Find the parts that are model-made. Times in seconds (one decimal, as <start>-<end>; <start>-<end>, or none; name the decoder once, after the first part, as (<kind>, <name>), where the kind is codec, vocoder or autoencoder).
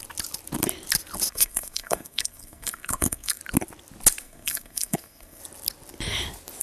1.3-3.4 (codec, SNAC); 4.2-5.4